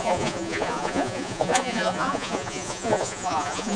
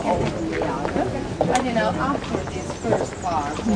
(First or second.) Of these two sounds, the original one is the second